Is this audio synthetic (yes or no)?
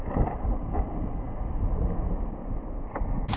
no